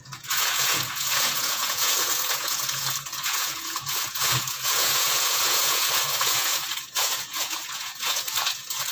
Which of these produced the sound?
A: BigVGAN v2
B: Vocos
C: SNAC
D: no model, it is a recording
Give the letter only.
B